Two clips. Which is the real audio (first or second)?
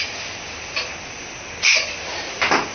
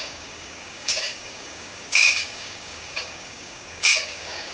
first